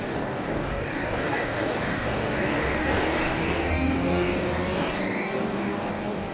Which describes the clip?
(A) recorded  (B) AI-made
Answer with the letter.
B